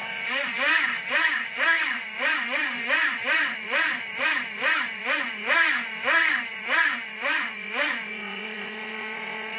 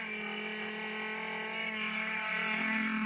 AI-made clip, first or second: first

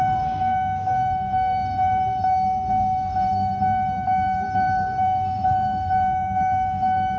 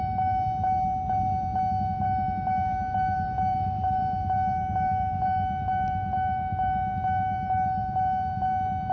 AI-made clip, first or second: first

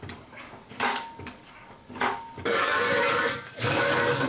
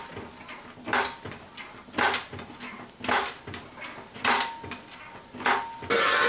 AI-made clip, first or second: first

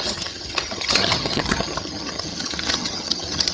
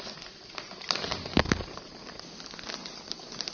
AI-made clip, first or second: first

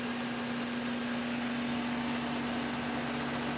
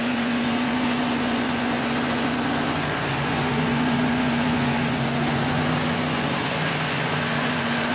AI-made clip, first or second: second